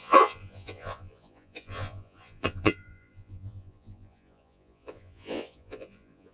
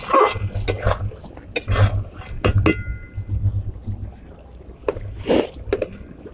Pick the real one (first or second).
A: second